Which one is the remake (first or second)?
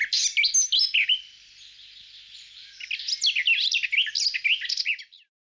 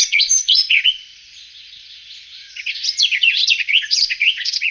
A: second